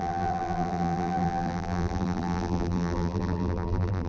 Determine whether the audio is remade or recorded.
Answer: remade